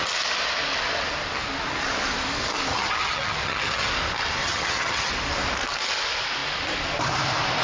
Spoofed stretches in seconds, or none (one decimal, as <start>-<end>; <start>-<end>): 2.7-3.9; 4.4-5.1